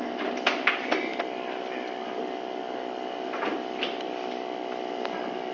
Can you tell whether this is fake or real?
real